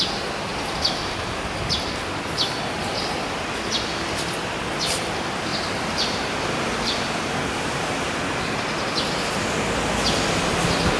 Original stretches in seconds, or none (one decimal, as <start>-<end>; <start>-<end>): 0.0-5.5; 7.3-11.0